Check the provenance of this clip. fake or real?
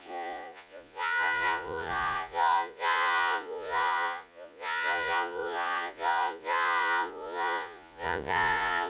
fake